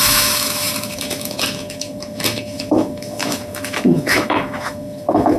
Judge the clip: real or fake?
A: fake